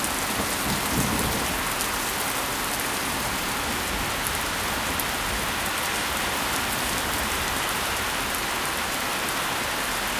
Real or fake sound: fake